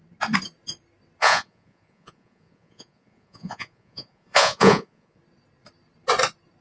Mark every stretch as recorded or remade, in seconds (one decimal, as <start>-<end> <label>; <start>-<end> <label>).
0.0-1.2 recorded; 1.2-5.2 remade; 5.2-6.6 recorded